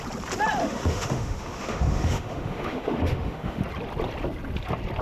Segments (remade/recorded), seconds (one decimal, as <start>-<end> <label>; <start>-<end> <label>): 0.0-0.6 recorded; 0.6-3.6 remade; 3.6-5.0 recorded